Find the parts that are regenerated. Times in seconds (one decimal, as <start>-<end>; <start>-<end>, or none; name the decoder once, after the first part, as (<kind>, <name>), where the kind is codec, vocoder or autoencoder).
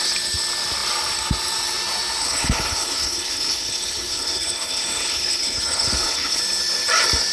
2.2-6.4 (codec, HILCodec)